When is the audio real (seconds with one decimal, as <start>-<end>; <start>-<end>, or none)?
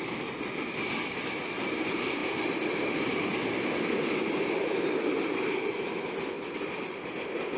0.0-7.6